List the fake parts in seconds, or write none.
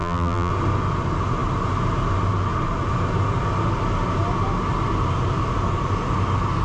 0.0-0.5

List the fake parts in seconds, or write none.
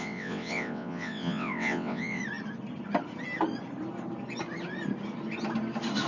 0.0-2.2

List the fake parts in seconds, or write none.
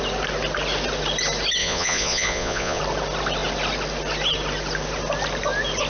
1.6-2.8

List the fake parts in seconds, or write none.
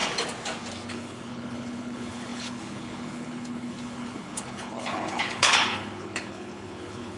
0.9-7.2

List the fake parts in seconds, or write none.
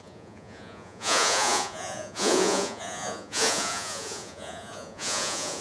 0.0-5.6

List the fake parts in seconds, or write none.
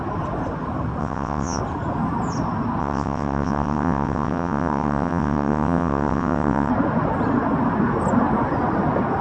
1.0-1.6; 2.8-6.7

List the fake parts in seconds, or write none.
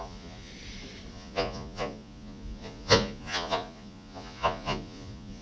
0.0-0.5; 1.1-5.4